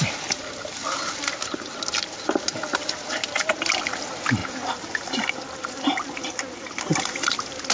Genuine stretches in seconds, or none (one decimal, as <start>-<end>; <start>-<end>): 0.0-7.7

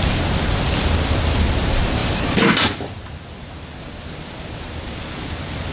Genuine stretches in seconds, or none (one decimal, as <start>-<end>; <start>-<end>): 0.0-5.7

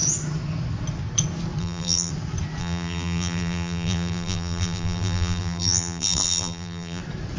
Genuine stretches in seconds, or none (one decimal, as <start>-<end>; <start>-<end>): 0.0-1.6; 2.1-2.6; 7.0-7.4

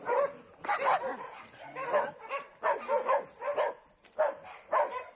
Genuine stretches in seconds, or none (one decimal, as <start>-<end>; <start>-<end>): 0.0-5.2

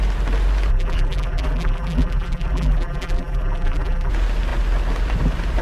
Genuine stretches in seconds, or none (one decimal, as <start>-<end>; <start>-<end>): 0.0-0.7; 4.1-5.6

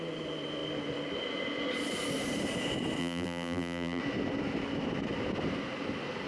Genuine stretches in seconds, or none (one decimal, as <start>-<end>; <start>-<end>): 0.0-3.0; 4.0-6.3

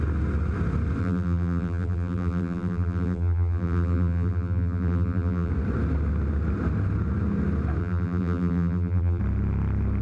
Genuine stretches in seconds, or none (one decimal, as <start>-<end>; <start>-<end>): 0.0-1.0; 5.5-7.8; 9.2-10.0